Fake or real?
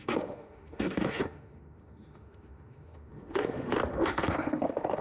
fake